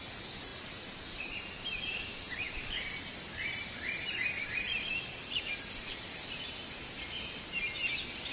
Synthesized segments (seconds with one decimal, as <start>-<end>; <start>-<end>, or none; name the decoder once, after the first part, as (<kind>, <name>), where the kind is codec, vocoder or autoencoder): 0.5-5.5 (vocoder, BigVGAN v2)